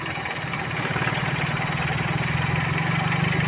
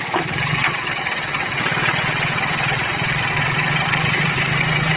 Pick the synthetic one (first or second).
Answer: second